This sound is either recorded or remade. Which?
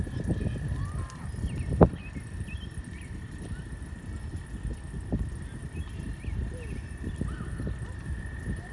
recorded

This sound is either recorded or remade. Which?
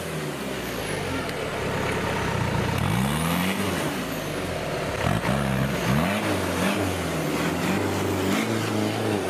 recorded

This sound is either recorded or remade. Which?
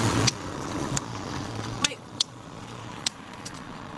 remade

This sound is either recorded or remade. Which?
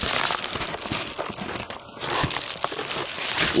recorded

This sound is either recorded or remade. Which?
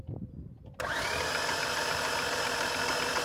recorded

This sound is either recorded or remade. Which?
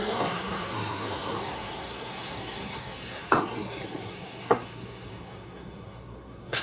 remade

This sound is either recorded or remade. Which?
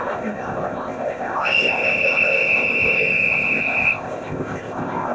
remade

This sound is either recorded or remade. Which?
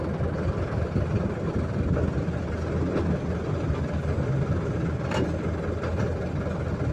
recorded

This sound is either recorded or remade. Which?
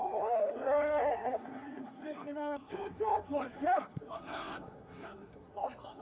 remade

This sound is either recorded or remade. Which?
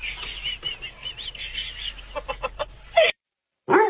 recorded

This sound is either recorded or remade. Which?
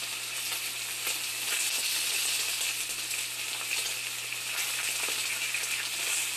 recorded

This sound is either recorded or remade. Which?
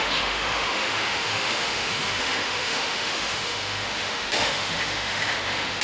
remade